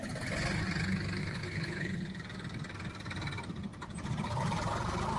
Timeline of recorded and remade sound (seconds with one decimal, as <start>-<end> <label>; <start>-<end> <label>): 0.0-1.2 recorded; 1.2-2.0 remade; 2.0-5.2 recorded